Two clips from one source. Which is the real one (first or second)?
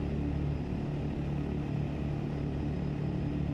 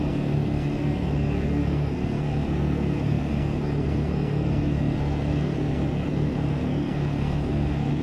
first